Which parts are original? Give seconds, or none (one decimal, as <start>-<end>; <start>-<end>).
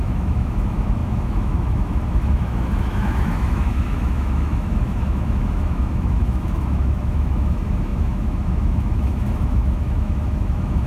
none